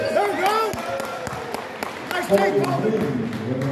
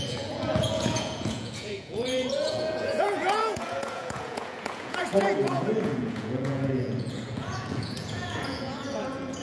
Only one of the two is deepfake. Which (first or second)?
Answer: second